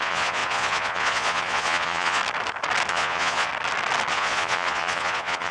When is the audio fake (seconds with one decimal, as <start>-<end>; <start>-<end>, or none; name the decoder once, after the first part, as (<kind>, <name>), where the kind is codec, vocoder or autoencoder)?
0.0-2.2 (vocoder, Vocos); 2.9-3.5; 4.1-5.5